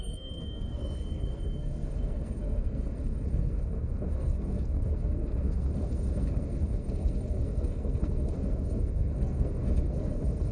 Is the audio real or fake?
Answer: fake